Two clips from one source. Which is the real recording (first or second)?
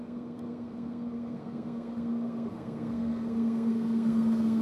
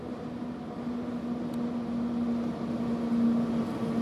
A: second